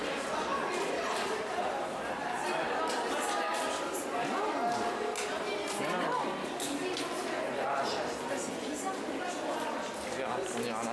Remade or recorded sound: recorded